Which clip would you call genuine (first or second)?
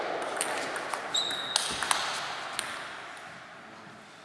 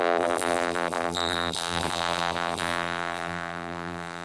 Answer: first